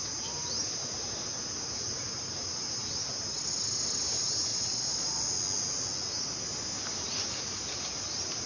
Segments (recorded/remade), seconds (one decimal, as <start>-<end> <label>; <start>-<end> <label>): 0.0-4.5 recorded; 4.5-5.2 remade; 5.2-8.5 recorded